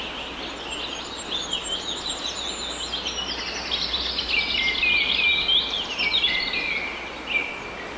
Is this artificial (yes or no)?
no